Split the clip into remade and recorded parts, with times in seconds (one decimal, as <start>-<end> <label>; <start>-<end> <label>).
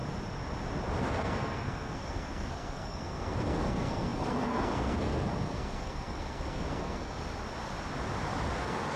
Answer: 0.0-1.0 recorded; 1.0-7.2 remade; 7.2-8.6 recorded; 8.6-9.0 remade